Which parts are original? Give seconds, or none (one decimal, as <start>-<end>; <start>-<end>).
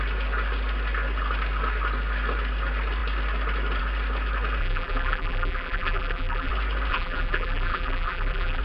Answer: 0.0-4.6; 6.5-6.9